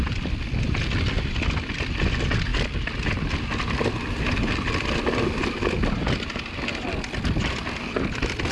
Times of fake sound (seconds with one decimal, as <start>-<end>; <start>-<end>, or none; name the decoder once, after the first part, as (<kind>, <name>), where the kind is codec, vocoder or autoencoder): none